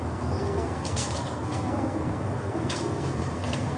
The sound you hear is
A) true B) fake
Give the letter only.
B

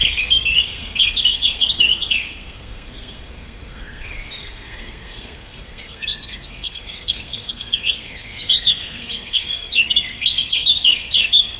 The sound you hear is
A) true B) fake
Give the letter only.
B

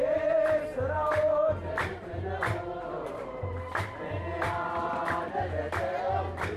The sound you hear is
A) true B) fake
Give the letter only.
A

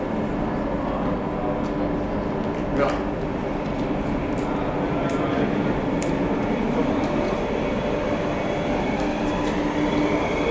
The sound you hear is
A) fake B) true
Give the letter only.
B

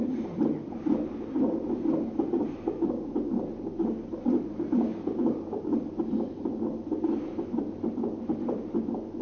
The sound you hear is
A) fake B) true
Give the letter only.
B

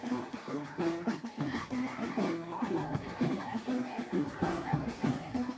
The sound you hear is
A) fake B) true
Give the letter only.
A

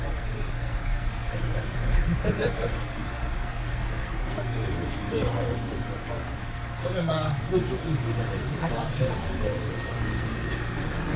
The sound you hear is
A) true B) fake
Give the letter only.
B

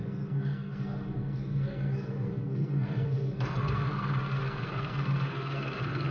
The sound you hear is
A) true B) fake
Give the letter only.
B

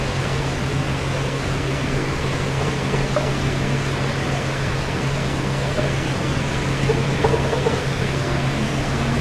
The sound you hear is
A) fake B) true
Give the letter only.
A